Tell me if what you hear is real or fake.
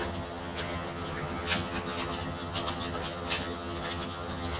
fake